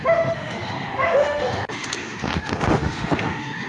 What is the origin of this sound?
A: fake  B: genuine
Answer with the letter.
A